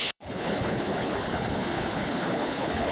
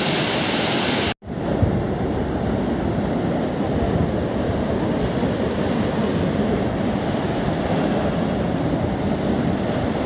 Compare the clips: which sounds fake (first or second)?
first